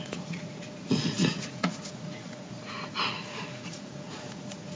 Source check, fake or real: fake